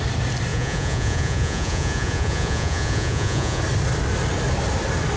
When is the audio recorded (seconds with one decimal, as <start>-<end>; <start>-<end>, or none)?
0.0-0.5; 3.6-5.2